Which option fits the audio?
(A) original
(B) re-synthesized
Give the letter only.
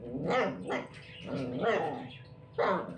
A